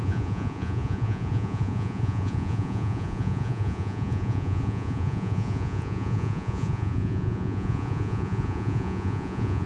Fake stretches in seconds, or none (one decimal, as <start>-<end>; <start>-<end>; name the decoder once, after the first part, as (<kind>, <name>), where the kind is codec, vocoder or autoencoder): 0.0-9.7 (vocoder, Vocos)